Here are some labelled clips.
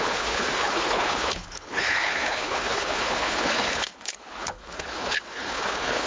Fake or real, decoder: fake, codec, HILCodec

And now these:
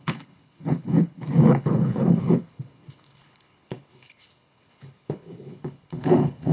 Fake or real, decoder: fake, codec, HILCodec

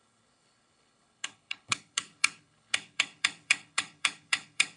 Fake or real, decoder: fake, codec, HILCodec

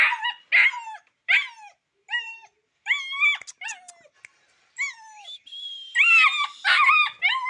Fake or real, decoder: real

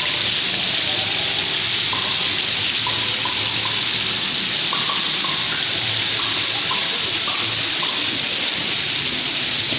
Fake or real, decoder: real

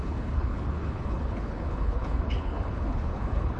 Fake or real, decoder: fake, codec, HILCodec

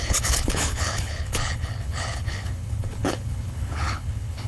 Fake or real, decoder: fake, codec, HILCodec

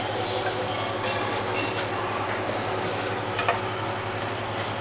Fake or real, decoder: real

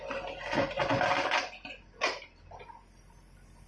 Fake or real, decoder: real